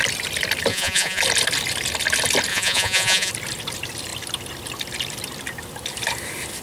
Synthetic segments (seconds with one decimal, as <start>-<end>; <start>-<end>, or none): 0.7-1.2; 2.5-3.3